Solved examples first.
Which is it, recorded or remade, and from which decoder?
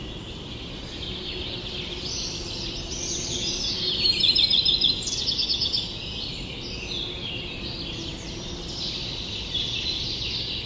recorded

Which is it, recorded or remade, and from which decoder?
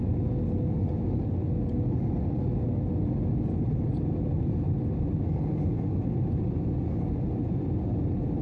recorded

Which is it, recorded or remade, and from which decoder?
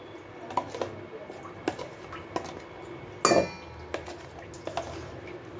recorded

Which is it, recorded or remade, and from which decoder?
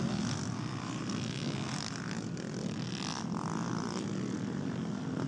recorded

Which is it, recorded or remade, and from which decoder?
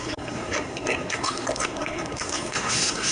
remade, codec, SNAC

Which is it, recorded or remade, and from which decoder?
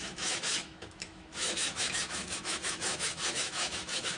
remade, autoencoder, DAC-VAE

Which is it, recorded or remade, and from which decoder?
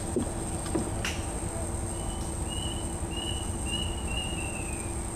recorded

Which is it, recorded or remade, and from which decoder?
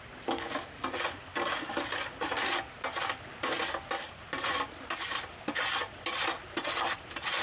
recorded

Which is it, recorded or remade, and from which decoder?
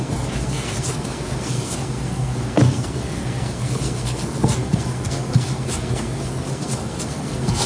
remade, codec, SNAC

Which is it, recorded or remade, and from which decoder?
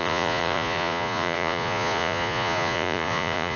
remade, vocoder, Vocos